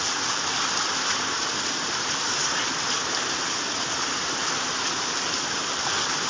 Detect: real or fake real